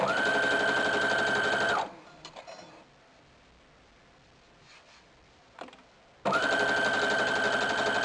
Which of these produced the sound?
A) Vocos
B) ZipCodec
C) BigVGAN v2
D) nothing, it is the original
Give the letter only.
D